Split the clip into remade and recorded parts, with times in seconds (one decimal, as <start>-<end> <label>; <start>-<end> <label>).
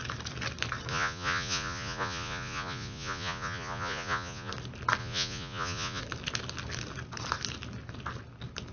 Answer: 0.0-0.9 recorded; 0.9-4.5 remade; 4.5-5.0 recorded; 5.0-6.0 remade; 6.0-8.7 recorded